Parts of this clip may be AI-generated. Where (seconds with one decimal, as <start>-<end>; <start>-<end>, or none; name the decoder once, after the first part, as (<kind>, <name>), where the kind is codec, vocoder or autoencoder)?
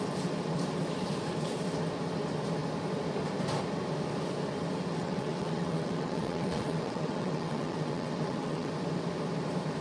4.9-8.7 (vocoder, WaveNeXt)